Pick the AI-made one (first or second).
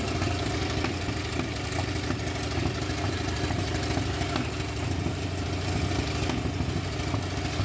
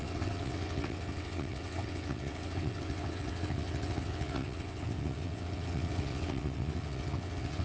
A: second